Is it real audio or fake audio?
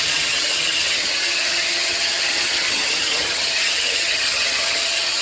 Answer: fake